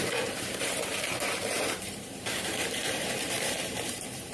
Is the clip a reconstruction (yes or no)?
yes